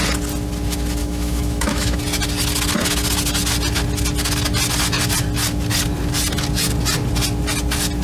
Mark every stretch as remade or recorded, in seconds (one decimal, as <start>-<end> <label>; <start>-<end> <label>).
0.0-1.0 recorded; 1.0-2.0 remade; 2.0-8.0 recorded